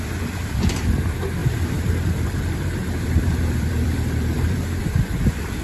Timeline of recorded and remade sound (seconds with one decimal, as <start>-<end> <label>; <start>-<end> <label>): 0.0-1.4 recorded; 1.4-4.8 remade; 4.8-5.6 recorded